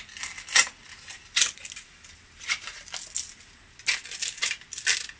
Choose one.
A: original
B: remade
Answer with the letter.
A